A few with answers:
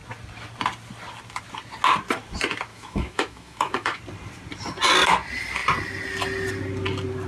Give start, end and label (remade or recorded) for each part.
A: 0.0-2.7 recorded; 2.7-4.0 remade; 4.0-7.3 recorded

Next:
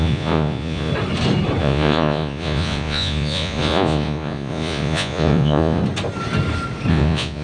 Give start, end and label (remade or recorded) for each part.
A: 0.0-0.9 remade; 0.9-1.6 recorded; 1.6-5.8 remade; 5.8-6.9 recorded; 6.9-7.4 remade

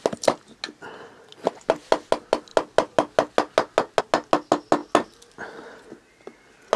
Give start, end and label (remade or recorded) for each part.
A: 0.0-6.8 recorded

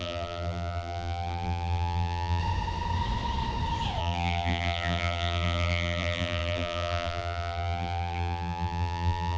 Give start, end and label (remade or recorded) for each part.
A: 0.0-2.4 remade; 2.4-4.0 recorded; 4.0-9.4 remade

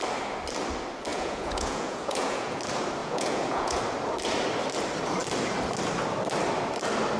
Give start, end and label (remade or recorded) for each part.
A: 0.0-1.1 recorded; 1.1-2.6 remade; 2.6-3.0 recorded; 3.0-3.8 remade; 3.8-7.2 recorded